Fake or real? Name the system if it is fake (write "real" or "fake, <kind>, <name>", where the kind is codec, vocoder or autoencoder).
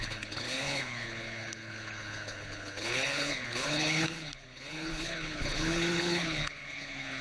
fake, codec, HILCodec